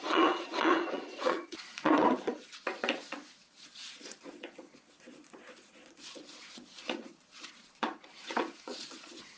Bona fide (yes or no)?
no